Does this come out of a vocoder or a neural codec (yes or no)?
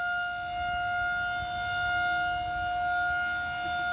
no